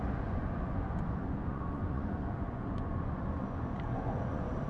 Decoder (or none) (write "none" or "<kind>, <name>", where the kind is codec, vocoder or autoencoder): vocoder, Vocos